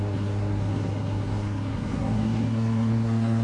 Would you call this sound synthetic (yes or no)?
yes